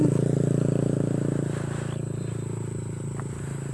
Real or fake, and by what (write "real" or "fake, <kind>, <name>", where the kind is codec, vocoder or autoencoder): real